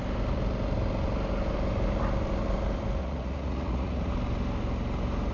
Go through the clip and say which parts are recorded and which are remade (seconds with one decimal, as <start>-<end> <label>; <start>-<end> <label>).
0.0-3.0 recorded; 3.0-4.1 remade; 4.1-5.3 recorded